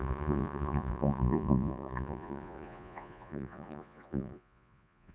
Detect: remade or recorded remade